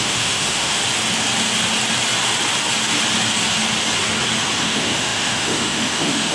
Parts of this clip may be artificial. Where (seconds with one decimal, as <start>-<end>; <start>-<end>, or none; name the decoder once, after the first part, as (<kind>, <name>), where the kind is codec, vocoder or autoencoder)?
0.0-0.8 (autoencoder, DAC-VAE); 4.6-6.3